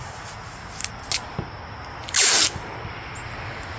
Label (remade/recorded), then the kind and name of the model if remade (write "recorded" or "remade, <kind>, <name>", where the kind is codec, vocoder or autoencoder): recorded